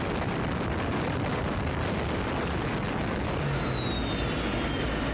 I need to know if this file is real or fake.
real